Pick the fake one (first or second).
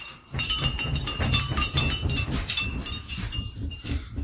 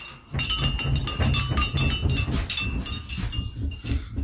first